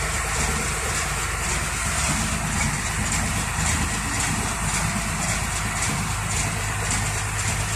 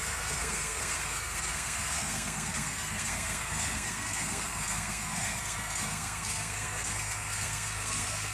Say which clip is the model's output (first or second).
second